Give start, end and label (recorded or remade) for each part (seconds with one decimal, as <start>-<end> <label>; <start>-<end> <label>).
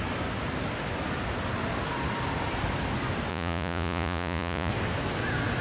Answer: 0.0-3.3 recorded; 3.3-4.7 remade; 4.7-5.6 recorded